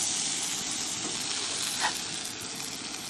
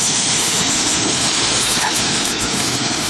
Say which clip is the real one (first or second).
first